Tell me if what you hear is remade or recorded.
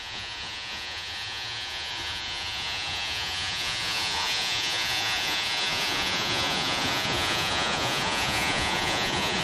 remade